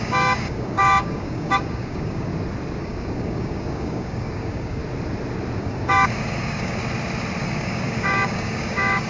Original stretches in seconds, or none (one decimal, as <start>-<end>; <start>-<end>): 2.3-2.8; 4.8-5.6; 6.8-7.4